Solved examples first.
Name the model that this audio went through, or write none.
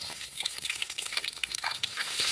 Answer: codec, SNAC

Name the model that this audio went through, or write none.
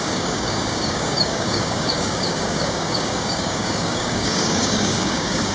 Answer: codec, DAC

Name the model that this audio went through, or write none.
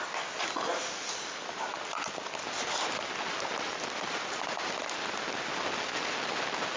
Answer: none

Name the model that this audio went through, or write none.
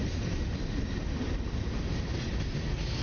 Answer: none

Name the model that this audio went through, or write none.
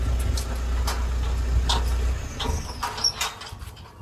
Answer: none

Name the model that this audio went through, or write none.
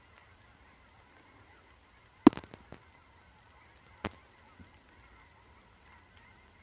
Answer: none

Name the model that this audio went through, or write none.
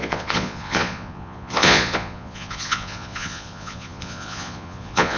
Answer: vocoder, Vocos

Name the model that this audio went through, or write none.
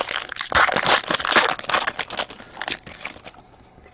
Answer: none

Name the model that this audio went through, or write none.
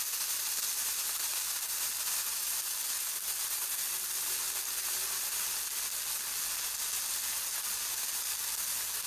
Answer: none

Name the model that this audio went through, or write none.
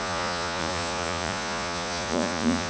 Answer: vocoder, Vocos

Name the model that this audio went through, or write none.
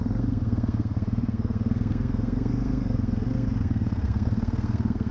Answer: codec, SNAC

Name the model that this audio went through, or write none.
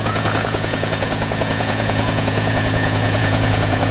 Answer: vocoder, Vocos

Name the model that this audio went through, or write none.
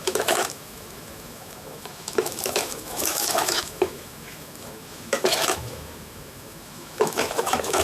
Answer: autoencoder, DAC-VAE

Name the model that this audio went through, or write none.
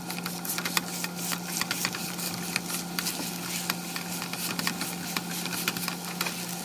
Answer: none